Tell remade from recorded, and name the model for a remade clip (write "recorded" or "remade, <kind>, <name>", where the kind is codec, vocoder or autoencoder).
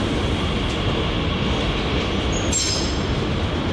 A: recorded